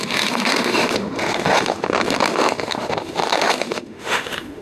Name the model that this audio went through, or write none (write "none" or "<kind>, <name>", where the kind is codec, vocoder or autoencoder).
autoencoder, DAC-VAE